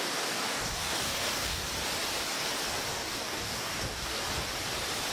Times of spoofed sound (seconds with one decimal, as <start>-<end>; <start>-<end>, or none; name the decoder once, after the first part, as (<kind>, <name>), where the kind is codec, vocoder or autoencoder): 0.0-1.6 (codec, DAC); 2.9-4.2